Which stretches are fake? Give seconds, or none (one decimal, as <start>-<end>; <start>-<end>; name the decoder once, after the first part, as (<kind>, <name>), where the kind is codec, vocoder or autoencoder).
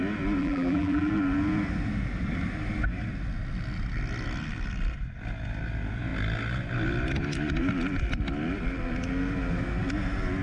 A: 0.4-1.1 (vocoder, BigVGAN v2)